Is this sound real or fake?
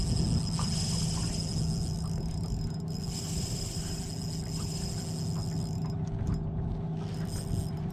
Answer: real